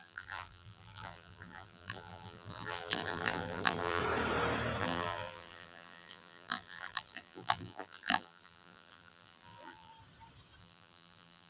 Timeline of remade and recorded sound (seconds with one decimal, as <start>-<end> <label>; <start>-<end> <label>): 0.0-4.0 remade; 4.0-4.8 recorded; 4.8-9.9 remade; 9.9-10.6 recorded; 10.6-11.5 remade